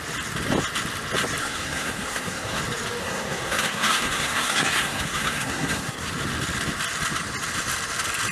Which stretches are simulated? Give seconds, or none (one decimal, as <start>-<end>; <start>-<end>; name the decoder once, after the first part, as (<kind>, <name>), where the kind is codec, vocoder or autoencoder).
1.4-2.6 (codec, SNAC); 3.0-6.1